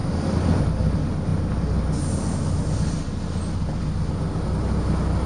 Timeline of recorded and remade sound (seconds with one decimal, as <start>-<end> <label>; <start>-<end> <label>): 0.0-5.3 recorded